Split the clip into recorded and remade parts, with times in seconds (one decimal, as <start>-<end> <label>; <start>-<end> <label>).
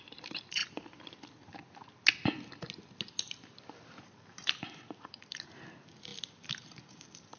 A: 0.0-0.6 remade; 0.6-5.0 recorded; 5.0-7.4 remade